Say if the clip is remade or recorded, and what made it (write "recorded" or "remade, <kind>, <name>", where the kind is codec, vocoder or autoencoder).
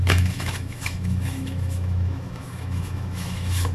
remade, autoencoder, DAC-VAE